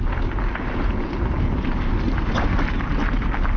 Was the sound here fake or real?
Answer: real